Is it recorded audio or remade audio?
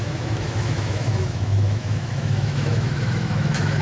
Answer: remade